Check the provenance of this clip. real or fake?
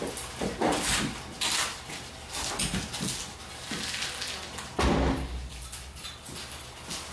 real